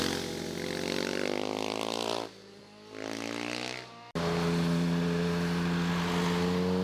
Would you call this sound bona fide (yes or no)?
yes